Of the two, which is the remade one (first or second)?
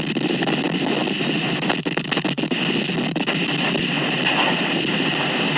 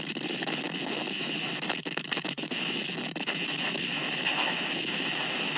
second